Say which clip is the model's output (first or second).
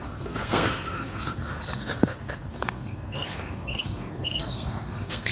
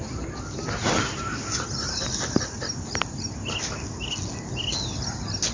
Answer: first